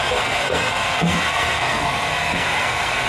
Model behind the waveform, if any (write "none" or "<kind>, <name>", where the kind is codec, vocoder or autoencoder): codec, SNAC